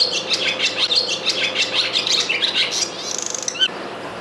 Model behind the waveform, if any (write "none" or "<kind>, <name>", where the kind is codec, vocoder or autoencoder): none